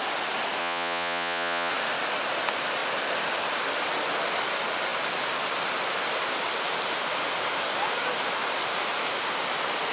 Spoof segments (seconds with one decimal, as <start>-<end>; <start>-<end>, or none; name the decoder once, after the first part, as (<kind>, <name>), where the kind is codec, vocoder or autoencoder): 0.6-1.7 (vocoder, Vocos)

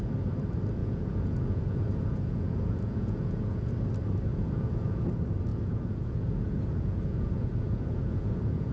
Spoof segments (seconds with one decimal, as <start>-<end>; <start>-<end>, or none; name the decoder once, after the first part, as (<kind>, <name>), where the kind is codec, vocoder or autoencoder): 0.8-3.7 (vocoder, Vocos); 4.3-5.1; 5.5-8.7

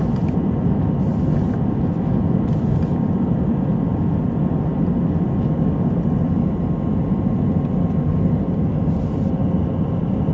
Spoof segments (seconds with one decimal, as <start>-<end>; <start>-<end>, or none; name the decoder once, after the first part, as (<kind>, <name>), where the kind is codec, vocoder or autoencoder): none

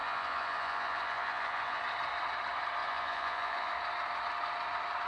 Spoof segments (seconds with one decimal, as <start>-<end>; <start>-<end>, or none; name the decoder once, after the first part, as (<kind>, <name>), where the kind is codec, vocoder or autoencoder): 0.0-1.8 (vocoder, Vocos); 2.8-3.7